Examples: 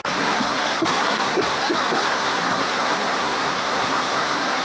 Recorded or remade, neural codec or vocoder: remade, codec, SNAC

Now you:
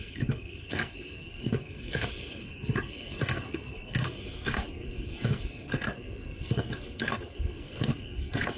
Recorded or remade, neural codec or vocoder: remade, codec, SNAC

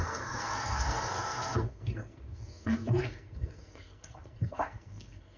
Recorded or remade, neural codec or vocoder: remade, codec, SNAC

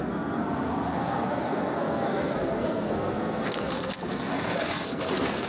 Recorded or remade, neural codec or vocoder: remade, codec, SNAC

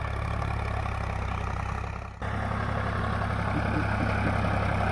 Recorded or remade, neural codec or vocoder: recorded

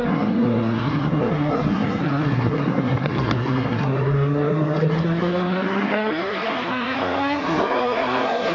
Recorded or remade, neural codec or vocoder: remade, codec, SNAC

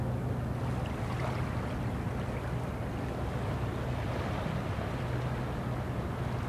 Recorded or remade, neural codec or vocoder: recorded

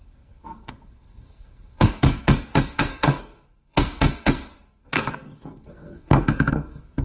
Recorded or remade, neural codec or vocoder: remade, codec, SNAC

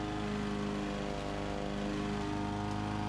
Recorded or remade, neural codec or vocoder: recorded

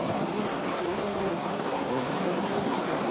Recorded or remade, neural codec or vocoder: remade, codec, SNAC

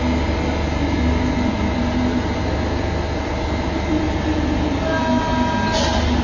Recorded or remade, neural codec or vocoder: recorded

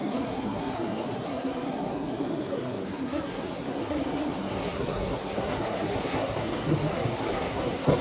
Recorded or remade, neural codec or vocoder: remade, codec, SNAC